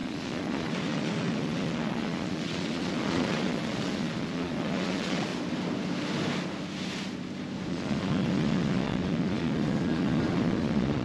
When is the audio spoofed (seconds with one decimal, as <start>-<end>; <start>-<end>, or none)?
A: 0.0-5.3; 7.7-11.0